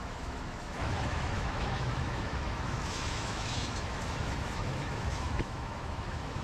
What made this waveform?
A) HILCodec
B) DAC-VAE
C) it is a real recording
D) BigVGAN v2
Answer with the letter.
B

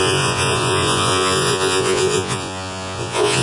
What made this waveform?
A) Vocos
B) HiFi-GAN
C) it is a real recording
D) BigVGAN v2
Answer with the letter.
A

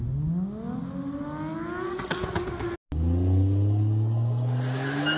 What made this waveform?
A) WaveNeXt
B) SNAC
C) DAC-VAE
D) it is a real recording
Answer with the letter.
D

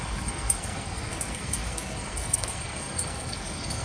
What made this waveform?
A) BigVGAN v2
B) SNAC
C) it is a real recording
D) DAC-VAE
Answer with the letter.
B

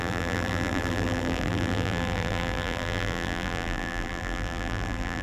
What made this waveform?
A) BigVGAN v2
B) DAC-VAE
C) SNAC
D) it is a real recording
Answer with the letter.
A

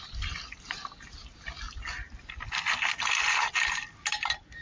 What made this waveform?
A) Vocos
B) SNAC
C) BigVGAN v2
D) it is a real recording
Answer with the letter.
D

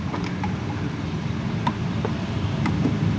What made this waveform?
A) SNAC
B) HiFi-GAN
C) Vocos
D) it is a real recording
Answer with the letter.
D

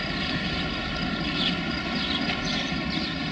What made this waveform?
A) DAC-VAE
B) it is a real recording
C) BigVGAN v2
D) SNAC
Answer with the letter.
B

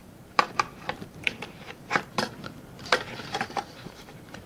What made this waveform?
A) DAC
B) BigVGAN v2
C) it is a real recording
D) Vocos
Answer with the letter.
B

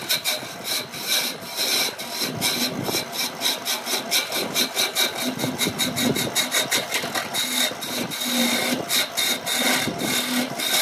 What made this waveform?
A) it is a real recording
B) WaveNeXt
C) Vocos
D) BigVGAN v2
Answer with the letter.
A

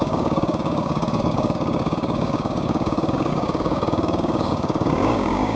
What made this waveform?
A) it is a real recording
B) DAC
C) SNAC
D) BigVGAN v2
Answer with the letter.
B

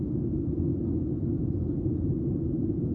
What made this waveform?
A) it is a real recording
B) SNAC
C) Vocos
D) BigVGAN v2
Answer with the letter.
A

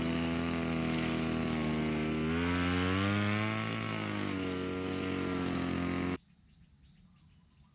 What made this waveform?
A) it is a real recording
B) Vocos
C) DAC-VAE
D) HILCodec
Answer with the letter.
A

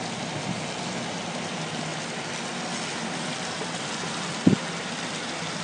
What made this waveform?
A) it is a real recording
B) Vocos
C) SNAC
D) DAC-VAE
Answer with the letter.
A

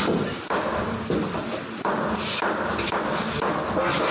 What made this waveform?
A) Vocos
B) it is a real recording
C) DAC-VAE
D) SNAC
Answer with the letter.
B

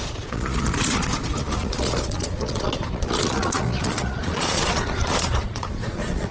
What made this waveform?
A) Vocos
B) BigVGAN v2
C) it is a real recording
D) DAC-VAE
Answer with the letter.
A